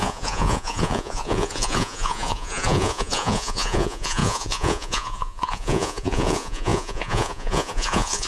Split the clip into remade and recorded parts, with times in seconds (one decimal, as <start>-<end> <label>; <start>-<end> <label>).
0.0-8.3 remade